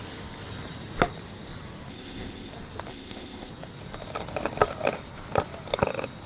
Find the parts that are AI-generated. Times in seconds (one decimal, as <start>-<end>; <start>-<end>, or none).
1.9-2.5; 2.9-3.5